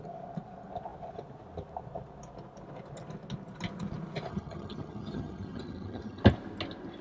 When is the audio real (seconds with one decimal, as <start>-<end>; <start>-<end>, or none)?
0.0-4.3; 6.2-7.0